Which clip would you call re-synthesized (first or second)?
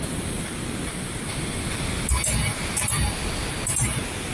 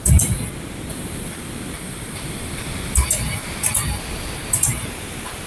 second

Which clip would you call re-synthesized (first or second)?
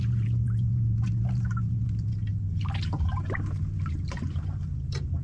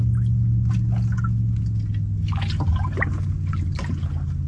first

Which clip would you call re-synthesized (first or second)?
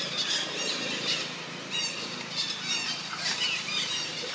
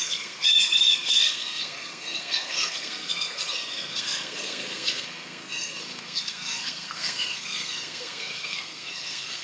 second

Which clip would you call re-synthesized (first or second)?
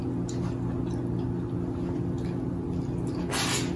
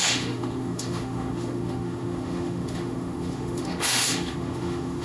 second